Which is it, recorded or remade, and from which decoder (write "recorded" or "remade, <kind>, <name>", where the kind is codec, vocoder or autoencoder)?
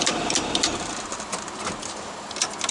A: recorded